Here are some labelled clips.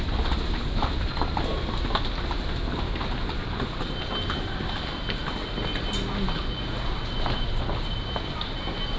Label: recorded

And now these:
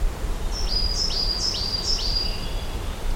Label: recorded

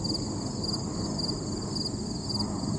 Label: recorded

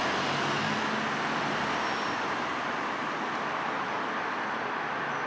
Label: recorded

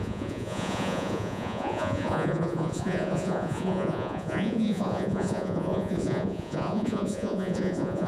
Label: remade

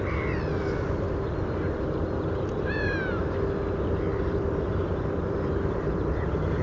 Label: recorded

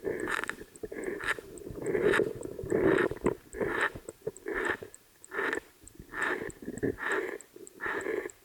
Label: remade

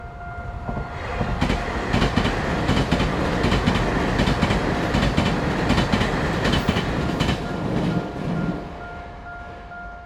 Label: recorded